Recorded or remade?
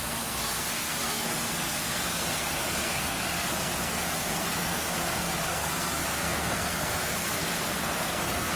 remade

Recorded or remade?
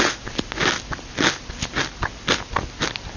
recorded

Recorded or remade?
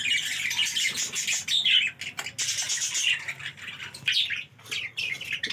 recorded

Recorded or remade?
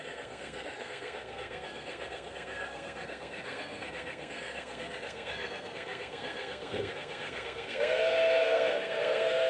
remade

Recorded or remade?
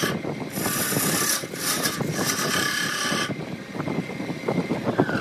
recorded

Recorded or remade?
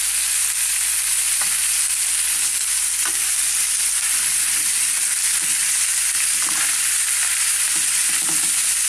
recorded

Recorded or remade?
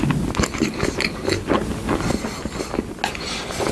recorded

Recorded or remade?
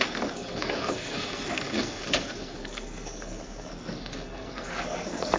remade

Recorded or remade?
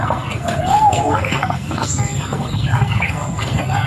remade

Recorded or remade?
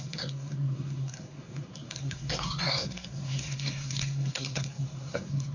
remade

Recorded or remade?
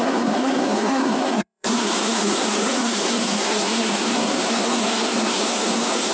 remade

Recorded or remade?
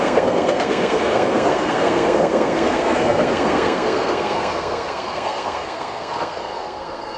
remade